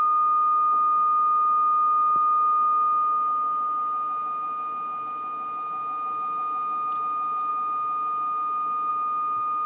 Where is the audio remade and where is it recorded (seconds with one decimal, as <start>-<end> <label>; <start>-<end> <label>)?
0.0-9.7 recorded